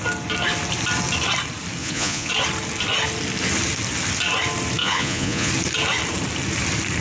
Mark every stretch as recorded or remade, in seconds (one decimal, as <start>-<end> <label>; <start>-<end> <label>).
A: 0.0-1.8 recorded; 1.8-2.3 remade; 2.3-4.8 recorded; 4.8-5.5 remade; 5.5-7.0 recorded